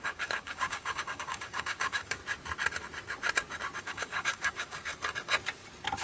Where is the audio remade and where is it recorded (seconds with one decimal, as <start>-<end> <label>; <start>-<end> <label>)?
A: 0.0-2.2 remade; 2.2-3.8 recorded; 3.8-4.9 remade; 4.9-6.0 recorded